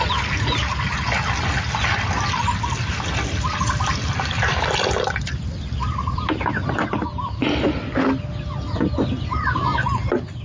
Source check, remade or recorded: recorded